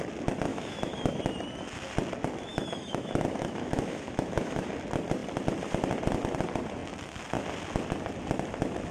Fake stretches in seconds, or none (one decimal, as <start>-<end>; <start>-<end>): 0.5-1.2; 2.5-4.7